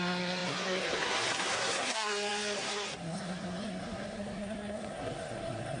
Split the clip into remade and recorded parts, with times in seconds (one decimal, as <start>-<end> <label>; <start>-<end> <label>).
0.0-5.8 remade